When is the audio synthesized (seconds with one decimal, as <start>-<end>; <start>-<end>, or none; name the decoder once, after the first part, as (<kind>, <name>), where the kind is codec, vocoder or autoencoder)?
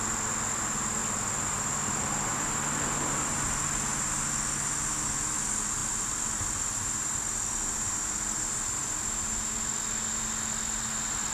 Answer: none